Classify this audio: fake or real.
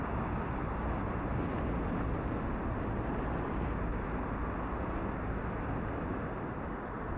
real